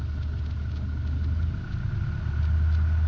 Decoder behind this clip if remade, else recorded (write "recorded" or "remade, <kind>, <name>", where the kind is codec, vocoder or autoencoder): recorded